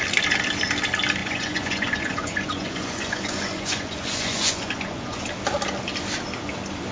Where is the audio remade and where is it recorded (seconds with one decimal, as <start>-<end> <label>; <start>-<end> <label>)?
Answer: 0.0-1.2 recorded; 1.2-5.2 remade; 5.2-6.9 recorded